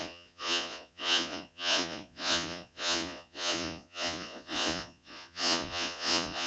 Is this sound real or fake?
fake